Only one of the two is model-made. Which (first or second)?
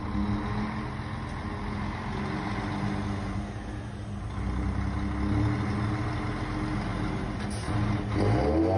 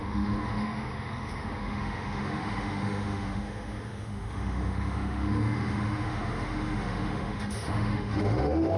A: second